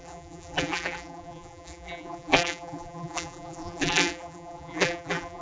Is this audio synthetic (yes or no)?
yes